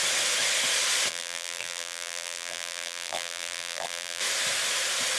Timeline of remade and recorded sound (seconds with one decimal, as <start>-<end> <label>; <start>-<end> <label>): 0.0-1.1 recorded; 1.1-4.2 remade; 4.2-5.2 recorded